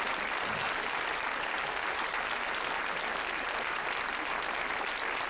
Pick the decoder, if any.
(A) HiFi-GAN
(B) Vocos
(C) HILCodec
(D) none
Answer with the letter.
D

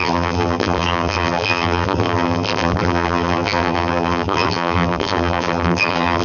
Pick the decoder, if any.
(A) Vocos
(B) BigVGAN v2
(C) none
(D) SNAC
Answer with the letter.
B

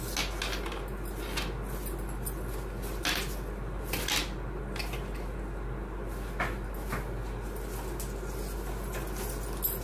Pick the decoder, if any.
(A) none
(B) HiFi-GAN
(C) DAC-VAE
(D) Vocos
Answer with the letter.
A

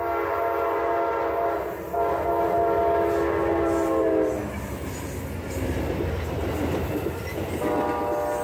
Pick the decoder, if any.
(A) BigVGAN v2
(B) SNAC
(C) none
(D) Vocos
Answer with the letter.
C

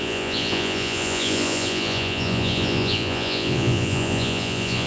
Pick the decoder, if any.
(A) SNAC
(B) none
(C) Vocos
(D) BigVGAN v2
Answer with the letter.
C